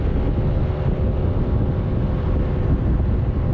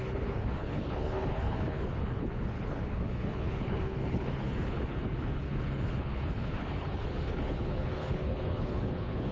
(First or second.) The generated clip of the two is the second